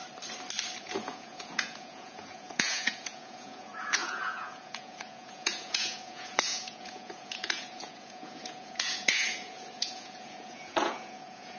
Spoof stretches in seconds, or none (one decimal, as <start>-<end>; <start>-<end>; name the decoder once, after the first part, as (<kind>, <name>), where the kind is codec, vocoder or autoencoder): 0.8-11.6 (vocoder, Vocos)